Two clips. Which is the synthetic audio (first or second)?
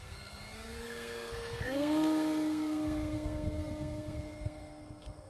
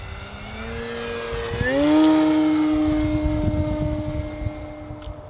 first